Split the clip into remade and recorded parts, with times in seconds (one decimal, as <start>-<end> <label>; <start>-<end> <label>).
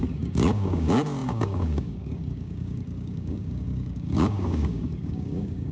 0.0-5.7 remade